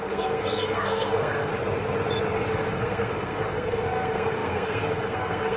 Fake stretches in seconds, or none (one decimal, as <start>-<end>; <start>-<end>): 0.0-1.5; 2.5-5.6